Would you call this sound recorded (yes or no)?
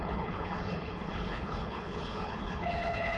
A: no